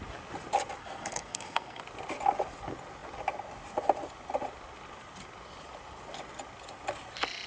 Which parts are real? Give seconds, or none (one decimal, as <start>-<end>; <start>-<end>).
0.0-0.8; 1.8-7.5